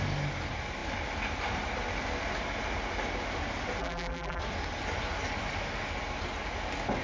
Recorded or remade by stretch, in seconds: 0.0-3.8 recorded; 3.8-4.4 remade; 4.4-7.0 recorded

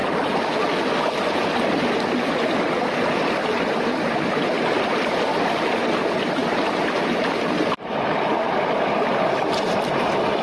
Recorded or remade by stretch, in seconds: 0.0-10.4 recorded

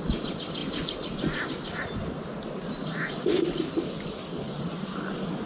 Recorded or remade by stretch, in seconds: 0.0-0.6 remade; 0.6-3.9 recorded; 3.9-5.5 remade

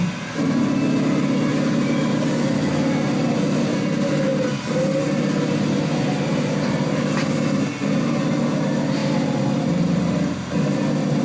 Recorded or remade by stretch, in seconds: 0.0-11.2 recorded